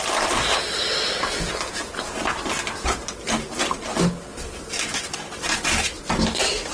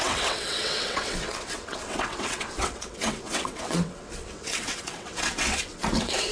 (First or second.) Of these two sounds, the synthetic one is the second